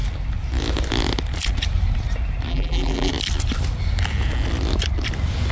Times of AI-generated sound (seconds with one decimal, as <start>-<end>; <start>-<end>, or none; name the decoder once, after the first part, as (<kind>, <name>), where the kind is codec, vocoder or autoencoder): 2.5-3.1 (vocoder, BigVGAN v2)